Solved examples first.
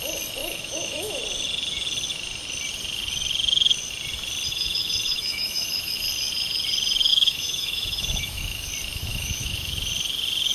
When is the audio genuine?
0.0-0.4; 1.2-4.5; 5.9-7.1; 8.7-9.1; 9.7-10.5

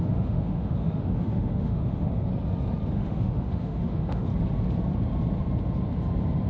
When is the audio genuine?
2.3-2.9; 4.3-6.5

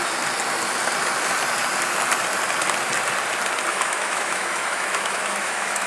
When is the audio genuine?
0.0-3.7

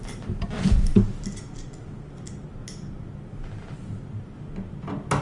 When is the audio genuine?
0.0-5.2

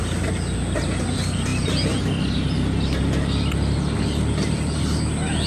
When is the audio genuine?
0.0-5.5

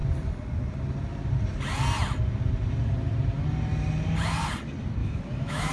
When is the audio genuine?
0.0-5.0

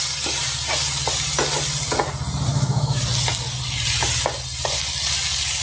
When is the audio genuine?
0.0-2.5; 3.0-5.6

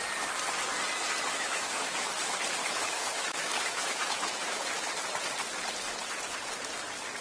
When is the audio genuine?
0.0-1.3; 2.1-2.6; 4.6-7.2